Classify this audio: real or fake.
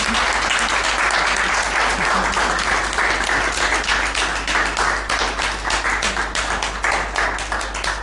real